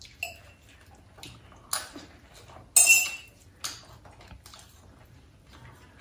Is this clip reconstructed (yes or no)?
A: no